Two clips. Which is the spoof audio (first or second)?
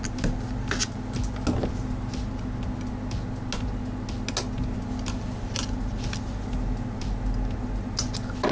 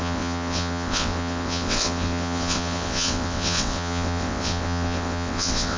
second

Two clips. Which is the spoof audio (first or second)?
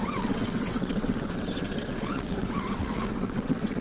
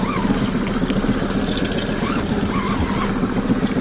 first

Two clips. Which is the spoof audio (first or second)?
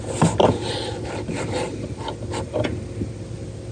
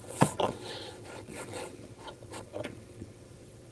second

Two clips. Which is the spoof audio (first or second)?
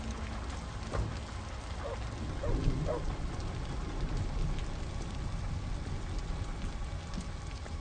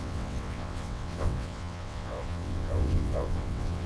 second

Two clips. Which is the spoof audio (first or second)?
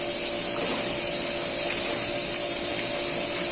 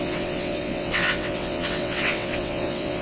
second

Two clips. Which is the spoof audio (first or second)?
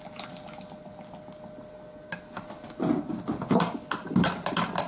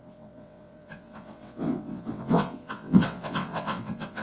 second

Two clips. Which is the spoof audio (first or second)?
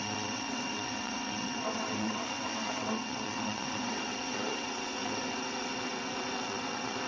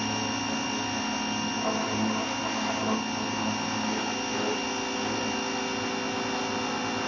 first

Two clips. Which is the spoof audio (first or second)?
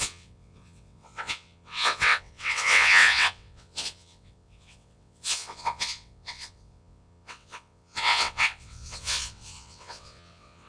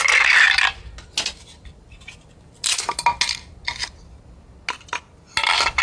first